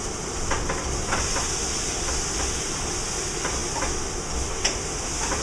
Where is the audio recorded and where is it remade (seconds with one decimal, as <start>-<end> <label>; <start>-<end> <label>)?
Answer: 0.0-5.4 recorded